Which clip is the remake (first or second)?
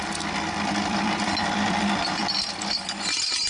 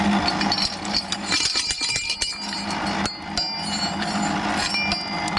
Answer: first